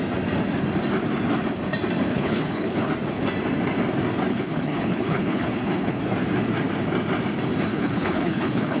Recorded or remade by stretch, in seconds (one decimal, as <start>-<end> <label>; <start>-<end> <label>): 0.0-2.1 recorded; 2.1-2.9 remade; 2.9-4.3 recorded; 4.3-6.0 remade; 6.0-7.7 recorded; 7.7-8.8 remade